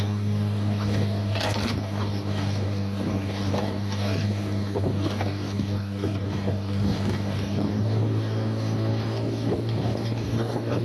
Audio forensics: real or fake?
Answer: fake